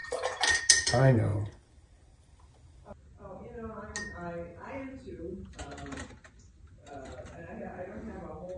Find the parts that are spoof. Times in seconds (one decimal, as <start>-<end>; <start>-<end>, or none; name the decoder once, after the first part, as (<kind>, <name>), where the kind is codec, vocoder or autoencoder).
0.0-0.6 (vocoder, BigVGAN v2); 4.5-6.1